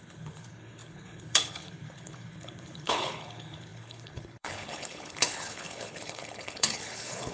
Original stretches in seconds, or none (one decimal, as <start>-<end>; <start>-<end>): none